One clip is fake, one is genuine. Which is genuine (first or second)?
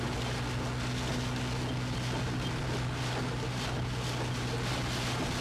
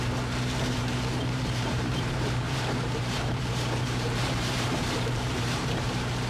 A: first